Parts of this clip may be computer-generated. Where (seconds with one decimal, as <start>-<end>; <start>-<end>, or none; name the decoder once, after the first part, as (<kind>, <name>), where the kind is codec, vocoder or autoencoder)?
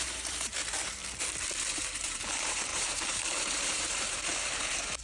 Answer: 0.0-1.0 (vocoder, BigVGAN v2); 1.7-5.0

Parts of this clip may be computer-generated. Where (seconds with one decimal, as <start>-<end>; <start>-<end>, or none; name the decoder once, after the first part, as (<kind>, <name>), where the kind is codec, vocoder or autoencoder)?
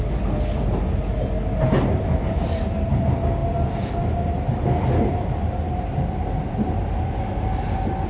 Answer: none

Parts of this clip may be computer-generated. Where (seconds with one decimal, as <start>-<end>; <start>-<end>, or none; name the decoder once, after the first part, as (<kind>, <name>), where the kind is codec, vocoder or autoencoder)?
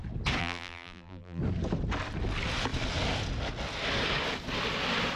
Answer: 0.4-1.4 (vocoder, BigVGAN v2)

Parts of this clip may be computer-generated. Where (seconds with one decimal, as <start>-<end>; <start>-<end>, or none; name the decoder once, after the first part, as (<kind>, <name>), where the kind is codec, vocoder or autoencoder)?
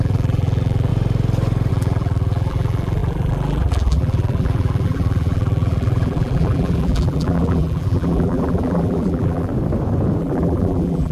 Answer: 0.0-0.9 (vocoder, BigVGAN v2); 1.7-9.5; 10.2-11.1